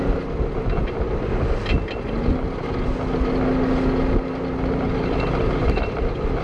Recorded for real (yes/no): yes